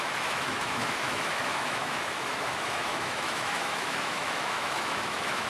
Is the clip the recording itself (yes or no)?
no